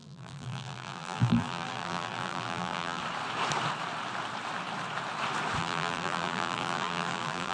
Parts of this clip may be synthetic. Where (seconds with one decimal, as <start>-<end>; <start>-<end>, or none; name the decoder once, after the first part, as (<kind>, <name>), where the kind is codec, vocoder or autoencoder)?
0.0-3.0 (vocoder, BigVGAN v2); 5.6-7.5